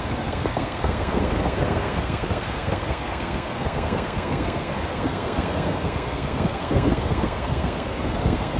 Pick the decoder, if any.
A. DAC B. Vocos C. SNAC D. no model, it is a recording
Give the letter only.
C